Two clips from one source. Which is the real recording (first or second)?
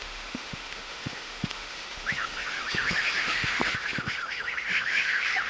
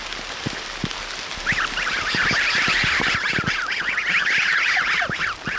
second